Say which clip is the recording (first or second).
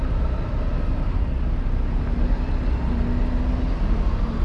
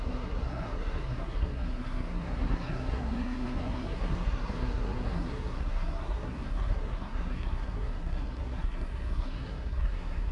first